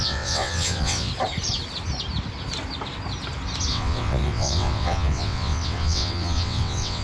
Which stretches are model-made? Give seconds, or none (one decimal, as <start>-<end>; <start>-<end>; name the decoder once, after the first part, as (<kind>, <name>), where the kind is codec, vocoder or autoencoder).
0.0-1.1 (vocoder, WaveNeXt); 3.7-7.0